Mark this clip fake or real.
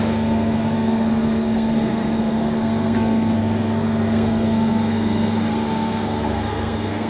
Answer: fake